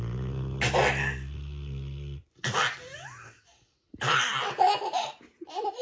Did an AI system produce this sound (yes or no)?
no